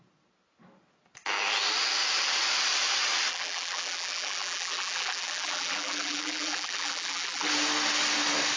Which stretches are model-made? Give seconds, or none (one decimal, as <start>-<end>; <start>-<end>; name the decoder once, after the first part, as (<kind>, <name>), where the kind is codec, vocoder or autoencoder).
3.3-7.5 (vocoder, BigVGAN v2)